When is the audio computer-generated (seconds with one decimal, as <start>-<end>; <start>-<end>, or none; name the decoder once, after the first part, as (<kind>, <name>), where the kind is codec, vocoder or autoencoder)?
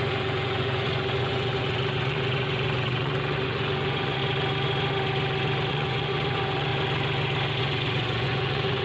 0.0-4.2 (vocoder, Vocos); 5.7-6.7; 7.6-8.8